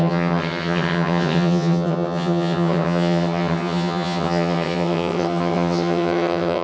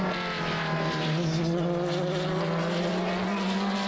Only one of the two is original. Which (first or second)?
second